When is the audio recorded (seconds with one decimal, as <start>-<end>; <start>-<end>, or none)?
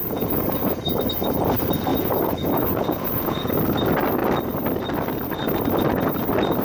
0.8-1.9; 3.5-6.6